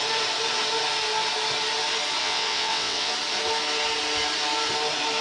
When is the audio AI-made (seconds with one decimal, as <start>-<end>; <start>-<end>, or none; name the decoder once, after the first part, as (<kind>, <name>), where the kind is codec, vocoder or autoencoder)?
2.2-3.1 (vocoder, WaveNeXt)